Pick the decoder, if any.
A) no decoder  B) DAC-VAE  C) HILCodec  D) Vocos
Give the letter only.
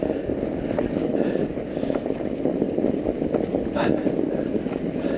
A